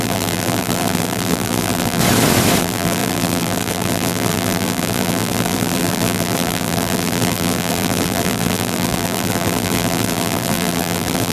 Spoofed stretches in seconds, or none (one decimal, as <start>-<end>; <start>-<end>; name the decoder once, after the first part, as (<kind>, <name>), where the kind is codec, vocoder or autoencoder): 0.0-2.0 (vocoder, BigVGAN v2); 2.6-11.3